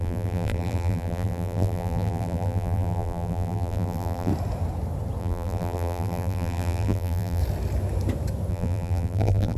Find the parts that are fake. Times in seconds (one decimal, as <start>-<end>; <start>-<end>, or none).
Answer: 0.0-4.3; 5.2-7.4; 8.5-9.6